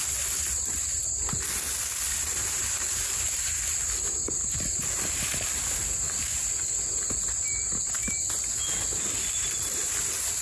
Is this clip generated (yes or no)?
no